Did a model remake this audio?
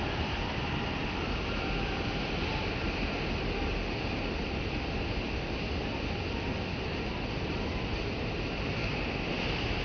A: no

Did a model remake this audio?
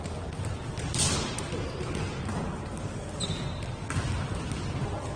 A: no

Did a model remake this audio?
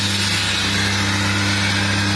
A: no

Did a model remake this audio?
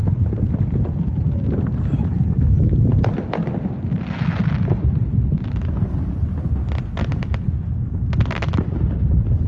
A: no